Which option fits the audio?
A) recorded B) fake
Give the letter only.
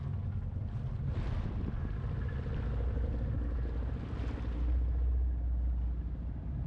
A